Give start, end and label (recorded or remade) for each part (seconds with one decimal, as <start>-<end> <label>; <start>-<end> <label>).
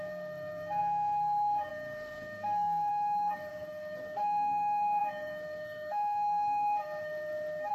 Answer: 0.0-7.7 remade